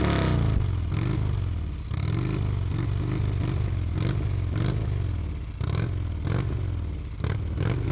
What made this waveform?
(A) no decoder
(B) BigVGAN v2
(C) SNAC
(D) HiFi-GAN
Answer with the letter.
A